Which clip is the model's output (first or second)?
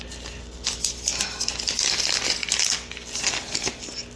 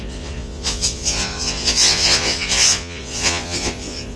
second